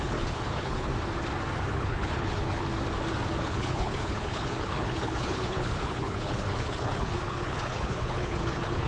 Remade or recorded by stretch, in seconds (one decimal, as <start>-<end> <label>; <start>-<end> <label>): 0.0-0.9 remade; 0.9-1.7 recorded; 1.7-2.7 remade; 2.7-3.4 recorded; 3.4-8.9 remade